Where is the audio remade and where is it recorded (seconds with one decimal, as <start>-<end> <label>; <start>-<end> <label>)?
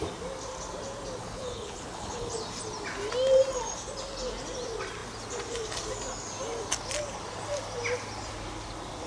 0.0-1.2 recorded; 1.2-2.3 remade; 2.3-9.1 recorded